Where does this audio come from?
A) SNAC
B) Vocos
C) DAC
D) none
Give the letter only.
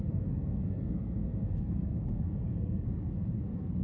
A